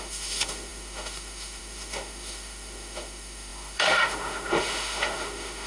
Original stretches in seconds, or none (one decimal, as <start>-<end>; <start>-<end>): none